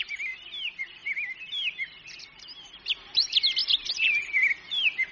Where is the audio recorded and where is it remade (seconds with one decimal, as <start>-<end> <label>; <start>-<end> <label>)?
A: 0.0-1.0 remade; 1.0-2.2 recorded; 2.2-3.6 remade; 3.6-4.5 recorded; 4.5-5.1 remade